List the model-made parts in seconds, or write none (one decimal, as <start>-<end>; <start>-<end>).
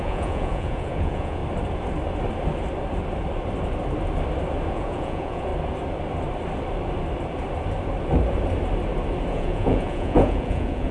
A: 0.0-1.4; 4.7-5.5; 9.3-10.9